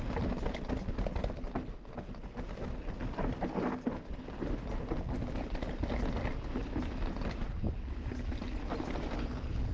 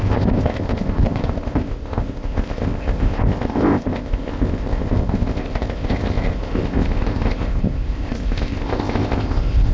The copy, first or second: second